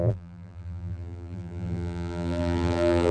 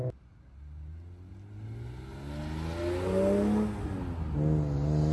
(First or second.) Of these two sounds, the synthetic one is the first